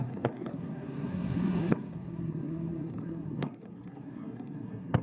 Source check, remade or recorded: remade